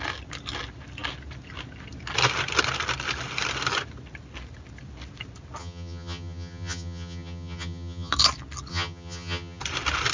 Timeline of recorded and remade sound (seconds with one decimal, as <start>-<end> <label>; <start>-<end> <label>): 0.0-5.6 recorded; 5.6-8.1 remade; 8.1-8.7 recorded; 8.7-9.6 remade; 9.6-10.1 recorded